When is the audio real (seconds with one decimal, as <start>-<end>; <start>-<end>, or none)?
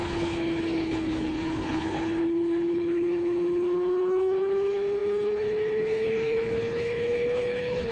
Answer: none